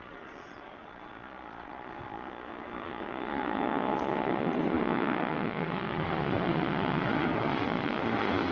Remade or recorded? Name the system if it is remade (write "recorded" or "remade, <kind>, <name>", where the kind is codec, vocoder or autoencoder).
remade, vocoder, Vocos